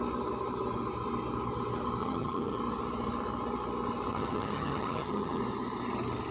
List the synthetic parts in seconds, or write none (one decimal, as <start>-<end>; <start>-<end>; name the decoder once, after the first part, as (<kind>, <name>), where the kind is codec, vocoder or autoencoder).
2.0-2.6 (vocoder, HiFi-GAN); 4.1-5.4